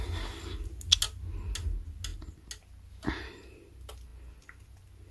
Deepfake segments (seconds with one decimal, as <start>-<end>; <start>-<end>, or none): none